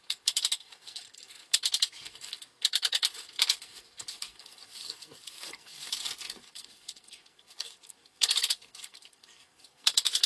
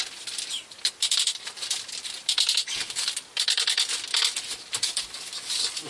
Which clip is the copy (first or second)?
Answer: first